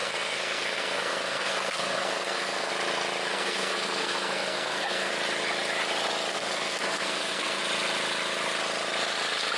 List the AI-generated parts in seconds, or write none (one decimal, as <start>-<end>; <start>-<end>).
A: 0.0-2.7; 3.3-5.1; 6.3-7.6